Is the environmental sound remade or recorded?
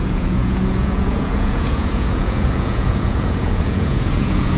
remade